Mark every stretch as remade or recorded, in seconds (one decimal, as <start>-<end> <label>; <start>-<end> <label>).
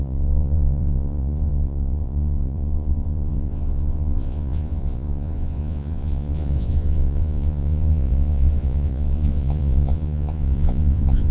0.0-11.3 remade